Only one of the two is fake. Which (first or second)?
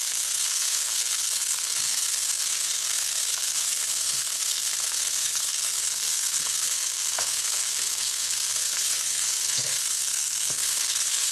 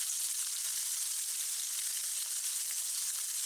first